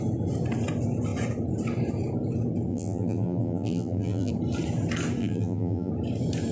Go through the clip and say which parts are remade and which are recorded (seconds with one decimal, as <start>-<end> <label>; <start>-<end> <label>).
0.0-2.7 recorded; 2.7-4.3 remade; 4.3-5.2 recorded; 5.2-5.9 remade; 5.9-6.5 recorded